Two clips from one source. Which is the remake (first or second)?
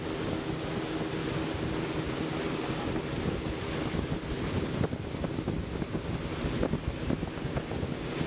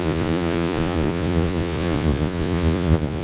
second